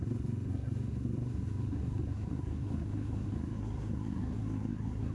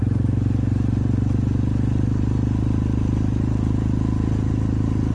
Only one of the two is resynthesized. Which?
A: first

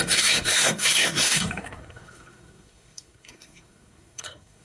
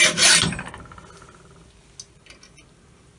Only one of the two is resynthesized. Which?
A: first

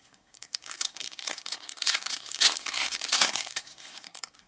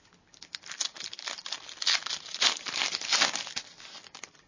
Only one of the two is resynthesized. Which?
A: first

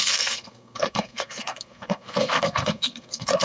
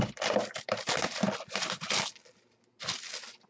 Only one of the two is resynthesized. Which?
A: first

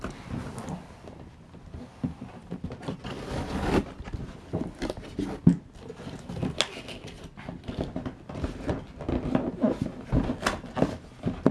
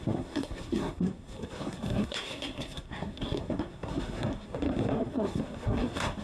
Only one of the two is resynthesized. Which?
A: second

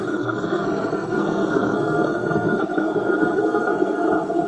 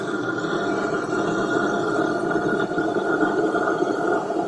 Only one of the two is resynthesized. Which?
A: first